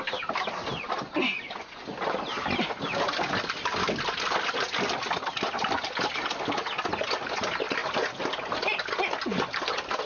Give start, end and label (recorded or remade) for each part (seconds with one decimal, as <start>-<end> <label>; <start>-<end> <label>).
0.0-1.2 recorded; 1.2-1.8 remade; 1.8-10.1 recorded